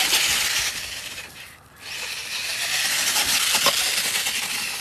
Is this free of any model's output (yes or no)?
yes